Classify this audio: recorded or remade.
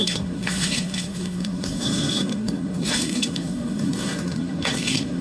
remade